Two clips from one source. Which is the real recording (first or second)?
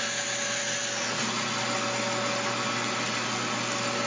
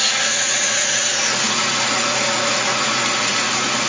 first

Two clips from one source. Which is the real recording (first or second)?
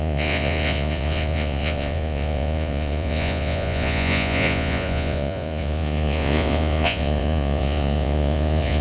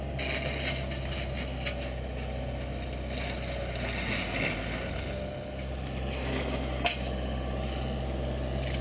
second